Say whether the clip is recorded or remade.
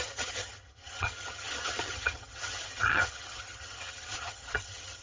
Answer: remade